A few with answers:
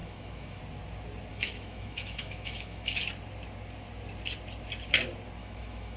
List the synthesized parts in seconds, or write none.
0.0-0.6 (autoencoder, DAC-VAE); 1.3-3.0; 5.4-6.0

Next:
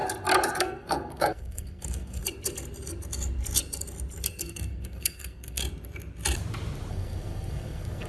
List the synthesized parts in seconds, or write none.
0.6-2.2 (codec, SNAC); 4.4-5.6; 6.9-8.1